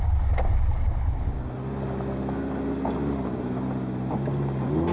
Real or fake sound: real